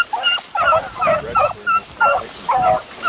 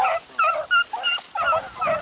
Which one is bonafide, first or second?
second